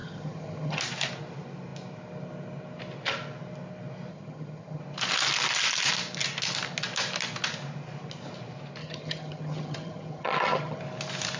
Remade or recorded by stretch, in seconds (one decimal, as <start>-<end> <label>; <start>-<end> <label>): 0.0-0.8 remade; 0.8-4.1 recorded; 4.1-4.8 remade; 4.8-8.8 recorded; 8.8-10.8 remade; 10.8-11.4 recorded